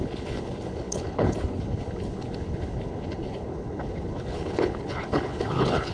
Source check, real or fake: fake